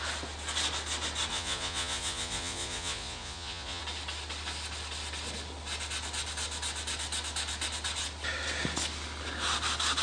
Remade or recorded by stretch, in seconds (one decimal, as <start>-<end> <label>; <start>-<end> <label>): 0.0-1.3 recorded; 1.3-3.8 remade; 3.8-10.0 recorded